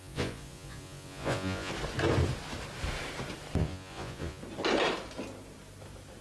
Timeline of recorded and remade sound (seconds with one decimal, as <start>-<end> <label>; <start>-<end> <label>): 0.0-1.7 remade; 1.7-3.6 recorded; 3.6-4.4 remade; 4.4-6.2 recorded